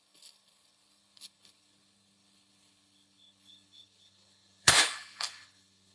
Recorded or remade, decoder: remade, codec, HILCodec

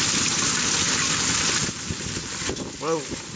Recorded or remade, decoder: remade, vocoder, BigVGAN v2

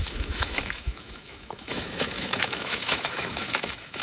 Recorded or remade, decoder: remade, autoencoder, DAC-VAE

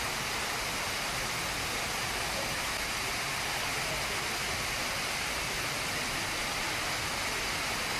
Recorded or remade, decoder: recorded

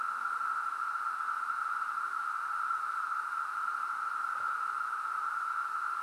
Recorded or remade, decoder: recorded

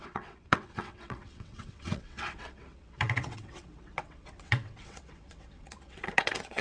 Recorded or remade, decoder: remade, vocoder, WaveNeXt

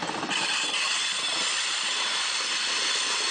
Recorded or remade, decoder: remade, vocoder, BigVGAN v2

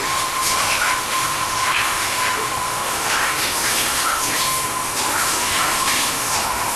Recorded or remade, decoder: remade, autoencoder, DAC-VAE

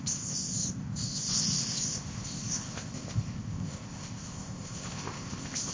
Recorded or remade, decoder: remade, codec, ZipCodec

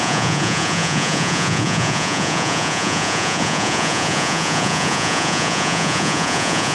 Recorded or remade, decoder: remade, vocoder, Vocos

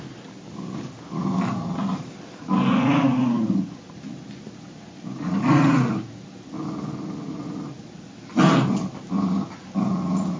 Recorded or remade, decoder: recorded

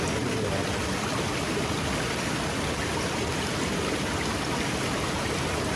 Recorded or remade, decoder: recorded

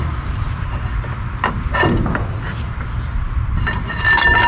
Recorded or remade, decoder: recorded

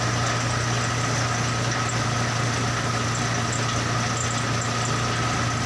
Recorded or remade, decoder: recorded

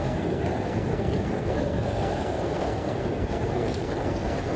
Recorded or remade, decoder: remade, codec, SNAC